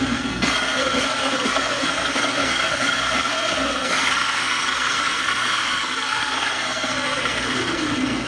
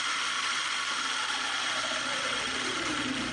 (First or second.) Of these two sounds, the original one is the second